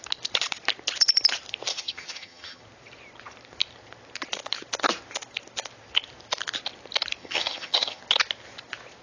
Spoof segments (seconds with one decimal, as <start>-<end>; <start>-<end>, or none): 1.7-2.6; 7.2-8.0